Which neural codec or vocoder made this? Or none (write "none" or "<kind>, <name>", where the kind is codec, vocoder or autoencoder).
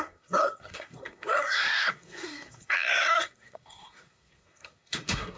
codec, SNAC